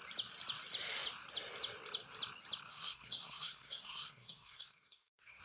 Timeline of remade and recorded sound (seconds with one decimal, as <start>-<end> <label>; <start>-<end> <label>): 0.0-2.7 recorded; 2.7-5.4 remade